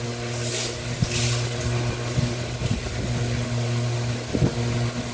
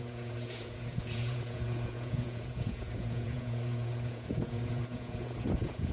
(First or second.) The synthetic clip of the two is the second